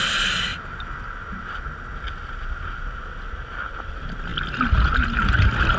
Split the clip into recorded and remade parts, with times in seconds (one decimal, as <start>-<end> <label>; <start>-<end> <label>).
0.0-5.8 recorded